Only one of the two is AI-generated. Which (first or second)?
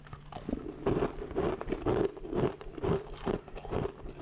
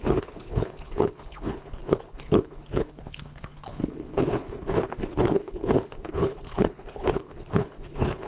second